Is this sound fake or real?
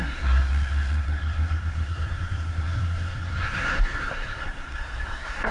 fake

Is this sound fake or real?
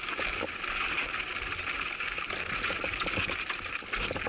real